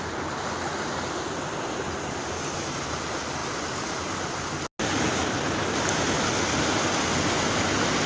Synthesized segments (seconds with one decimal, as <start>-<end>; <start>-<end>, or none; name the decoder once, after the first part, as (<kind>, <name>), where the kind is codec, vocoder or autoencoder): none